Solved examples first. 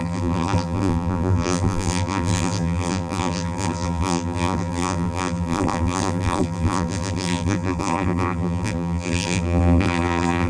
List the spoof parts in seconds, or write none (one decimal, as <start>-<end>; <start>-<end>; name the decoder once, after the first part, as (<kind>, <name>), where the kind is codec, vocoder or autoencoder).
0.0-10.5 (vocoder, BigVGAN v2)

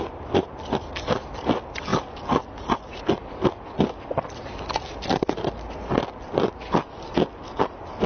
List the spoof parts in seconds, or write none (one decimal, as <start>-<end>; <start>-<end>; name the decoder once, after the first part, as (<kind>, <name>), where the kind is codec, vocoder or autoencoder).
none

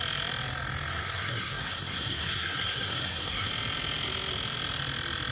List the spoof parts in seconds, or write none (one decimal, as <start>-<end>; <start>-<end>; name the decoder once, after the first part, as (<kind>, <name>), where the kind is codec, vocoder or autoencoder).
0.9-3.5 (codec, SNAC)